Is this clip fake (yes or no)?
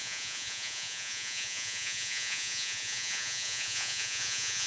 yes